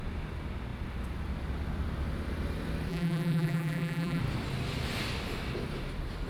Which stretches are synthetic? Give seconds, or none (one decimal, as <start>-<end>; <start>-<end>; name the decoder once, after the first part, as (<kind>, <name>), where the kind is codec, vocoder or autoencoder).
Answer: 2.9-4.2 (vocoder, BigVGAN v2)